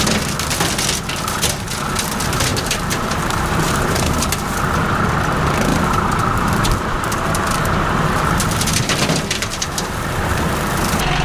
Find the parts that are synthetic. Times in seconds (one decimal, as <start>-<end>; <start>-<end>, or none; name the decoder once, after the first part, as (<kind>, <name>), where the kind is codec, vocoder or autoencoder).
2.5-4.3 (vocoder, BigVGAN v2); 5.7-10.4